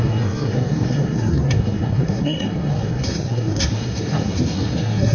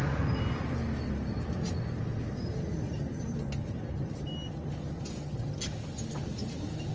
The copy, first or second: first